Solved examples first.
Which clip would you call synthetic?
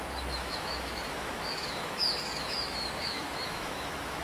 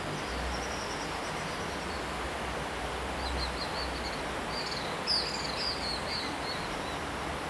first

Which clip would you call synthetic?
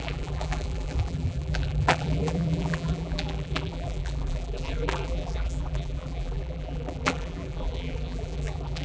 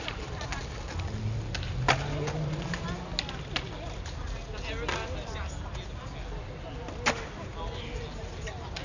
first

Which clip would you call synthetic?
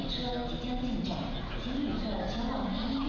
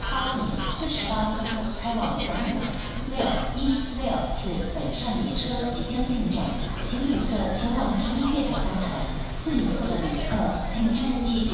second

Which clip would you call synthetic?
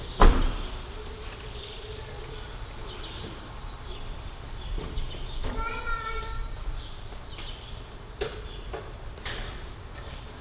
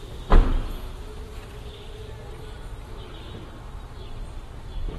first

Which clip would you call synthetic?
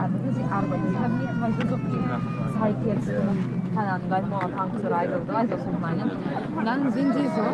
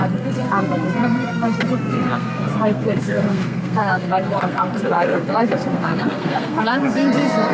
second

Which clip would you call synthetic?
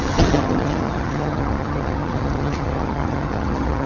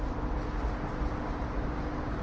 first